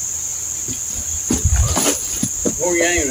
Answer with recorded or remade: recorded